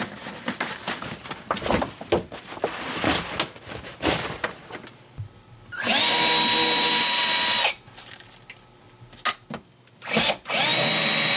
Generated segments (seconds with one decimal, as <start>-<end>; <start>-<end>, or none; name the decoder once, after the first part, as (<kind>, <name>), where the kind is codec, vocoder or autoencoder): none